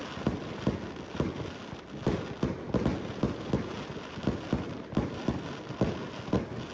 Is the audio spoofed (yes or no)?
no